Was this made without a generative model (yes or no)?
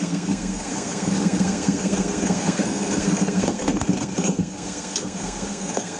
no